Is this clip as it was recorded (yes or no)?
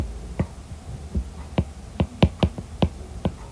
yes